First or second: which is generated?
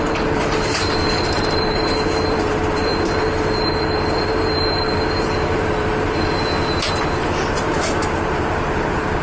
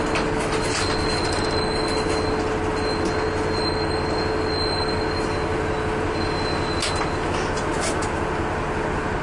first